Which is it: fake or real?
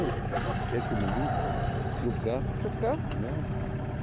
real